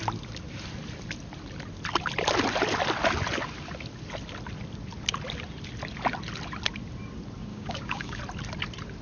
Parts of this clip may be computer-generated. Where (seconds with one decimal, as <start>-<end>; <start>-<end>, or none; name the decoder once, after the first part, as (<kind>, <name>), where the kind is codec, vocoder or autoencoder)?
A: 7.5-8.2 (codec, DAC)